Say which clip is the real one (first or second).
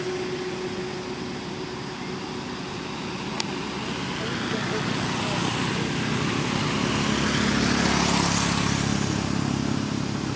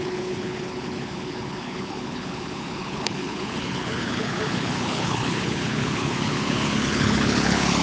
first